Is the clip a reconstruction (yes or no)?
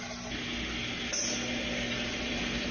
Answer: no